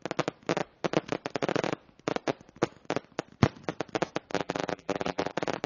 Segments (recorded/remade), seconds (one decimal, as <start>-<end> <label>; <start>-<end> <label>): 0.0-4.3 recorded; 4.3-5.3 remade; 5.3-5.7 recorded